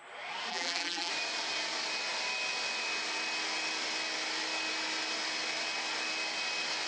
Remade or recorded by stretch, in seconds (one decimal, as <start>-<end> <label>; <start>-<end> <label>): 0.0-0.5 recorded; 0.5-1.1 remade; 1.1-6.9 recorded